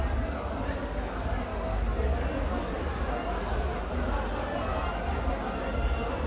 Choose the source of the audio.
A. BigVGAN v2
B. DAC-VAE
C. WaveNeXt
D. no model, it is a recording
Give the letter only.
D